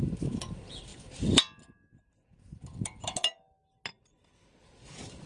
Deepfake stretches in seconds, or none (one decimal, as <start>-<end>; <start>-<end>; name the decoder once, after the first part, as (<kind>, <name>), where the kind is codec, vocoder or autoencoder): none